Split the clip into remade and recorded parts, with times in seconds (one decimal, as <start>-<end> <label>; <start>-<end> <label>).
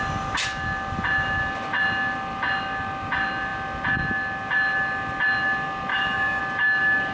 0.0-5.9 recorded; 5.9-6.4 remade; 6.4-7.1 recorded